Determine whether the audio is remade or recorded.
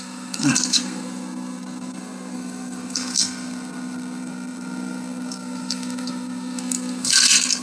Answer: remade